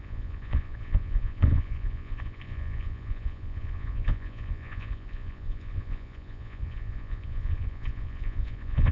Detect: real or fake fake